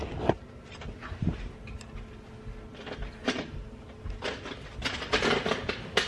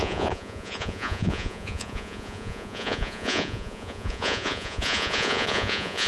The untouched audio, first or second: first